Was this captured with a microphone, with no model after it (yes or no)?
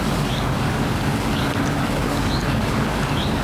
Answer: no